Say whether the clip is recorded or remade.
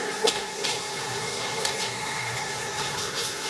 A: remade